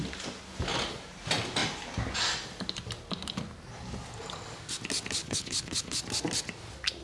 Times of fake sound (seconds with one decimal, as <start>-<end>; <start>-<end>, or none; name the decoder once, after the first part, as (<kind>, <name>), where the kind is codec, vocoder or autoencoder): 5.2-6.0 (codec, HILCodec)